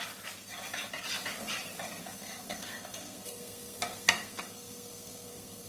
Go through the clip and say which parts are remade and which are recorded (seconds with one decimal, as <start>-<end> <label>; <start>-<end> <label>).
0.0-2.0 recorded; 2.0-5.7 remade